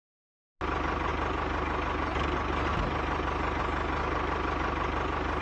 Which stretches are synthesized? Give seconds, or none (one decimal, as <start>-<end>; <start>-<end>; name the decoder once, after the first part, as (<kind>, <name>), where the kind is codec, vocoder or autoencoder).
none